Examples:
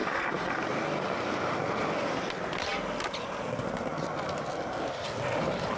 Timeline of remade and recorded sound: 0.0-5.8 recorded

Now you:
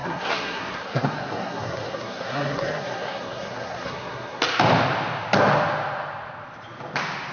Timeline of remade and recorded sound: 0.0-4.4 remade; 4.4-7.3 recorded

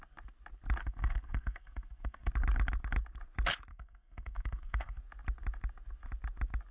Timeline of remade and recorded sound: 0.0-0.8 recorded; 0.8-2.3 remade; 2.3-3.7 recorded; 3.7-5.0 remade; 5.0-6.7 recorded

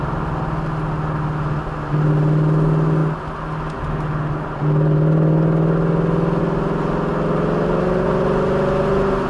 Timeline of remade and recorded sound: 0.0-9.3 recorded

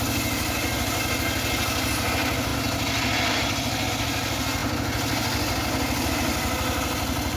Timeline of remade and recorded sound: 0.0-7.4 recorded

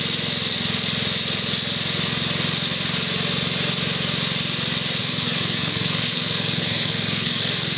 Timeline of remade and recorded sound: 0.0-5.0 recorded; 5.0-7.8 remade

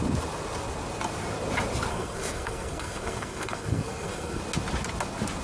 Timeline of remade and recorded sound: 0.0-1.9 recorded; 1.9-4.4 remade; 4.4-5.4 recorded

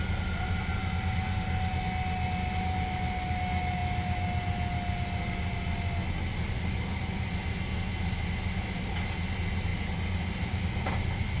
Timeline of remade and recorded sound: 0.0-11.4 recorded